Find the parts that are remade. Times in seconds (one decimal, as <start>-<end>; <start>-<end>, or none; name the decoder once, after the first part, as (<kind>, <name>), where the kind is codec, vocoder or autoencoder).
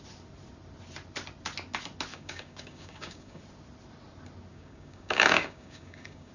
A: 2.1-3.4 (codec, DAC); 4.5-6.3